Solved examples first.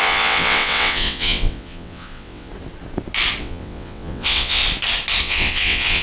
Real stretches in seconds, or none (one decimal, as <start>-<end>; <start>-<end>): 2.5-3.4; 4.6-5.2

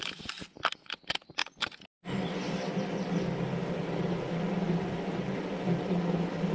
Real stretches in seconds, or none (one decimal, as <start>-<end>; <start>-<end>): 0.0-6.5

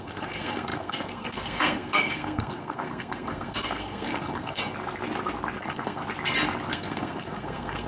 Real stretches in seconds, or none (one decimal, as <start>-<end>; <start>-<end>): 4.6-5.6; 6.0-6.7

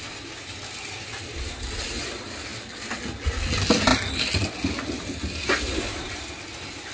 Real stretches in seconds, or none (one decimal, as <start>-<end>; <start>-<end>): 0.0-6.9

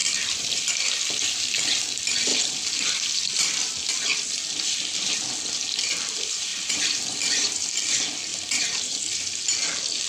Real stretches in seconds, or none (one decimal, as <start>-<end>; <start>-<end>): 1.0-6.5; 7.7-8.3; 9.0-10.1